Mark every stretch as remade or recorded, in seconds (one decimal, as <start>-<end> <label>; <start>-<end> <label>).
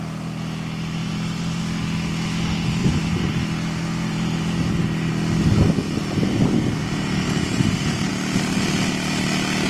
0.0-1.0 recorded; 1.0-1.6 remade; 1.6-2.8 recorded; 2.8-3.3 remade; 3.3-3.9 recorded; 3.9-5.1 remade; 5.1-6.8 recorded; 6.8-8.1 remade; 8.1-9.7 recorded